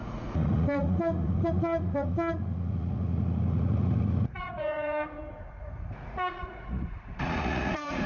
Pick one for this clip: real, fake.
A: fake